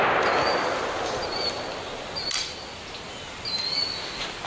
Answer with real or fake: real